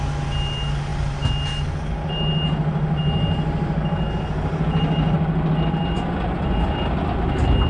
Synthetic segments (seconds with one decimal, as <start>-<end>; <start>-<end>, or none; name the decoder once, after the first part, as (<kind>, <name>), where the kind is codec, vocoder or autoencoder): none